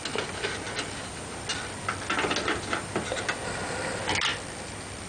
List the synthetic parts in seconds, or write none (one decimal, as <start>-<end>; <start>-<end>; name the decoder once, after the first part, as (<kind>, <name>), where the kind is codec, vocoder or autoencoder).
none